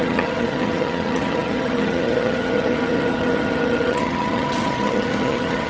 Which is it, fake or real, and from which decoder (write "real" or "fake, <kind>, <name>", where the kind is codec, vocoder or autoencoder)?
fake, vocoder, HiFi-GAN